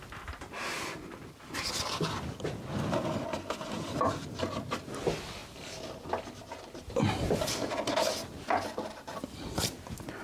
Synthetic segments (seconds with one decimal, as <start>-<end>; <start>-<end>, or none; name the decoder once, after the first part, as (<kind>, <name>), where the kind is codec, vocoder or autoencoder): none